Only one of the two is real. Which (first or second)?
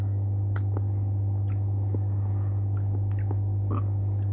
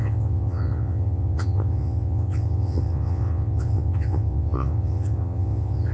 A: first